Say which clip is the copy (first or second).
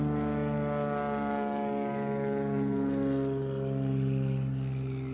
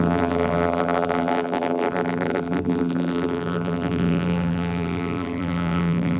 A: second